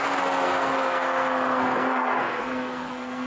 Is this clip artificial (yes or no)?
yes